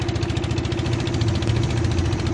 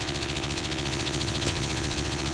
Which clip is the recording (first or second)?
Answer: first